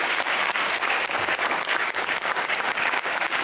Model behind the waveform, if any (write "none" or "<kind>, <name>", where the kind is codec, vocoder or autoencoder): codec, DAC